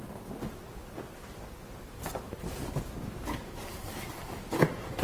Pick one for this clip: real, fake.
real